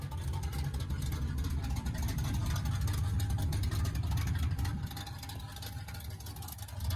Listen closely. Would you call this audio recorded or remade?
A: recorded